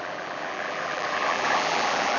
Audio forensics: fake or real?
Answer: fake